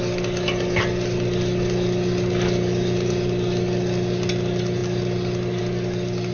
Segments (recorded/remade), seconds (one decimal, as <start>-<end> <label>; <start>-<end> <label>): 0.0-6.3 recorded